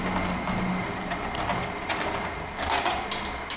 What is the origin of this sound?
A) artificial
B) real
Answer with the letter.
B